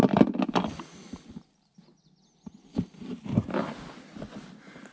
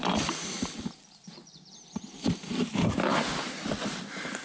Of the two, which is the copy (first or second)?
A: second